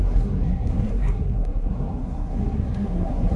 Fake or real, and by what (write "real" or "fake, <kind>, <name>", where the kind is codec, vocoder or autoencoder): fake, codec, SNAC